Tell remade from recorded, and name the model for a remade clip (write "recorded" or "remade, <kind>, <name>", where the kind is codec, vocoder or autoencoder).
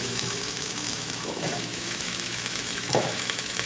remade, autoencoder, DAC-VAE